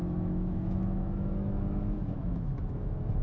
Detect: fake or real fake